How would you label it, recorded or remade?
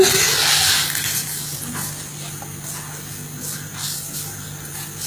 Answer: recorded